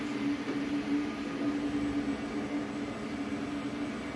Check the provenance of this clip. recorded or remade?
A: recorded